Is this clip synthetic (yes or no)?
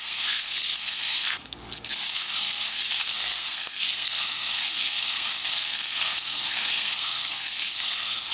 yes